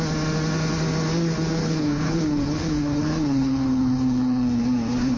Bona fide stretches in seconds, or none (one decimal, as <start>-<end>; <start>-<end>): 0.0-1.6; 4.6-5.2